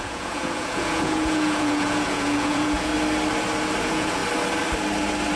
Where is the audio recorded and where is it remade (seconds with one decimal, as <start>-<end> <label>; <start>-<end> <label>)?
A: 0.0-2.9 remade; 2.9-3.8 recorded; 3.8-4.2 remade; 4.2-5.4 recorded